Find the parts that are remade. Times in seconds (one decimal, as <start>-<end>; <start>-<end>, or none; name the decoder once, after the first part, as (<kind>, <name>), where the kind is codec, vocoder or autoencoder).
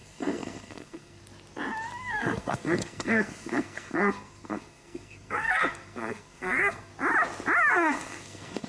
0.0-1.2 (codec, SNAC); 2.0-6.9; 7.7-8.7